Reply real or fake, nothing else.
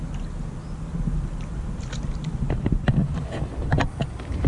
real